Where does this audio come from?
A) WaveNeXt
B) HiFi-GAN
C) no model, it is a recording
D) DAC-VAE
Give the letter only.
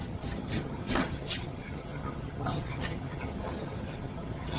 B